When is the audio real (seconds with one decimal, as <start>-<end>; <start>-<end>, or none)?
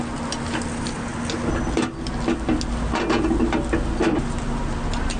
0.0-5.2